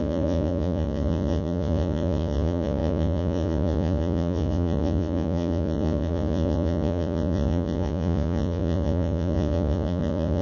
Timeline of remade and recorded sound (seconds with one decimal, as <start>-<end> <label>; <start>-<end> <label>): 0.0-10.4 remade